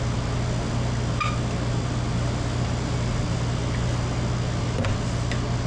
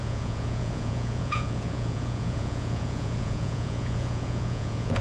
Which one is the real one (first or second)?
first